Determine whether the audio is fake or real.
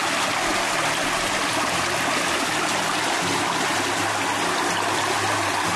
real